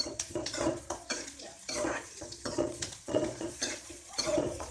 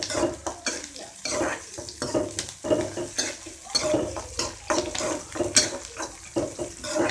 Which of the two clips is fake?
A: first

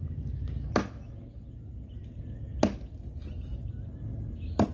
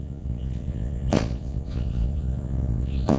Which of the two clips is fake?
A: second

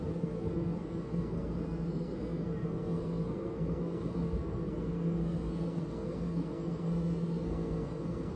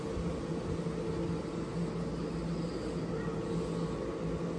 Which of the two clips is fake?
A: first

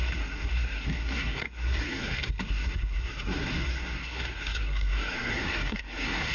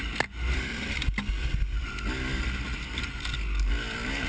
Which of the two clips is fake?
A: first